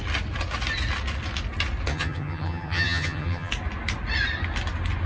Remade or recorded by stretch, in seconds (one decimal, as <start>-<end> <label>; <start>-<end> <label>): 0.0-1.9 recorded; 1.9-3.5 remade; 3.5-5.1 recorded